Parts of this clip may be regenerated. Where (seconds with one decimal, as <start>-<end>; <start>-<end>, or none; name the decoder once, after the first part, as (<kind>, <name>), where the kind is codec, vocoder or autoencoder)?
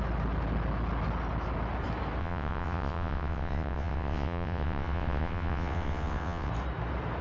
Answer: 2.2-6.5 (vocoder, WaveNeXt)